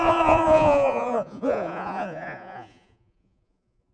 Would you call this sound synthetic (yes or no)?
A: yes